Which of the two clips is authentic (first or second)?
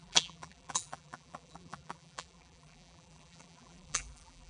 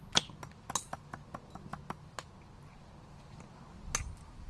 second